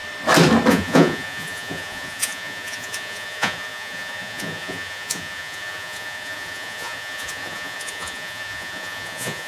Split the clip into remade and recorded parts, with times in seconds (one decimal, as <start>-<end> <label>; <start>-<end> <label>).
0.0-0.7 recorded; 0.7-9.5 remade